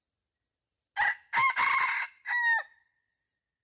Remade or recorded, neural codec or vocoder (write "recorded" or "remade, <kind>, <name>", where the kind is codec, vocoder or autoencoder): recorded